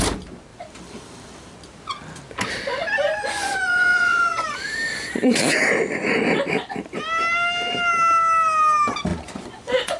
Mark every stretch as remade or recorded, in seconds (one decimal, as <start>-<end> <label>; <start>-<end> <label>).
0.0-3.2 recorded; 3.2-4.4 remade; 4.4-9.1 recorded; 9.1-10.0 remade